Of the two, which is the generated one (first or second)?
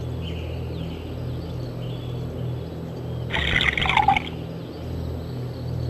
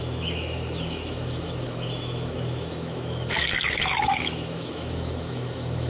second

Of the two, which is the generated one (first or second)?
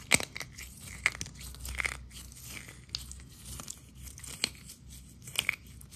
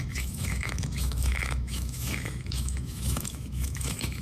second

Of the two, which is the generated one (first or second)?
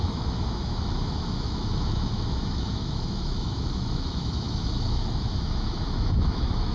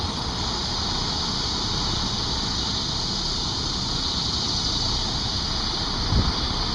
first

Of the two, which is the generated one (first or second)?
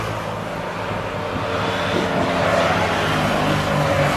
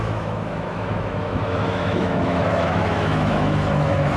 second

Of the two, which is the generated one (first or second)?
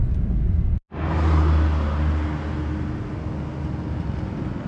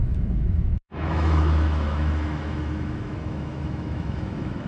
second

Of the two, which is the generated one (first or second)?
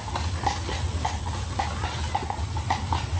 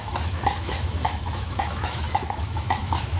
second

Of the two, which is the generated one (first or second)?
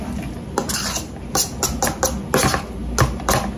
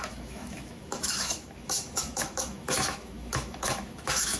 second